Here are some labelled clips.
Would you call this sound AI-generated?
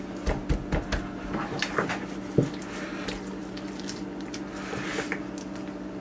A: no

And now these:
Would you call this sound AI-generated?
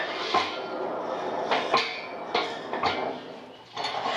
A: no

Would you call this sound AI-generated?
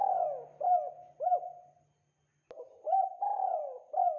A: no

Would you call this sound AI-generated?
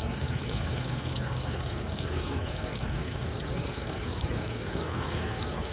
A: yes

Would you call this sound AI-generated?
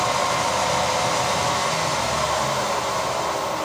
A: no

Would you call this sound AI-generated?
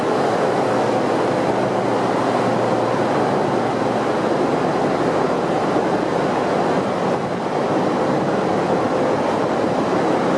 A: no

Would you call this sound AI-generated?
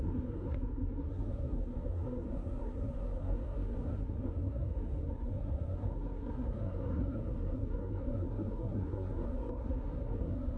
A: yes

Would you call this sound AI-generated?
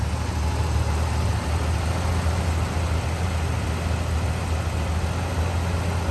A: no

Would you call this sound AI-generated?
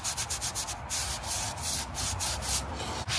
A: no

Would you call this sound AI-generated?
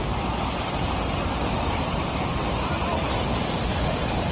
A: no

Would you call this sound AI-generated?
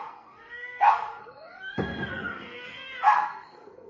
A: yes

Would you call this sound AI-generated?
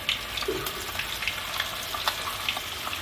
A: no